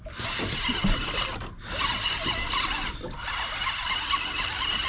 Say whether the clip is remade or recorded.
recorded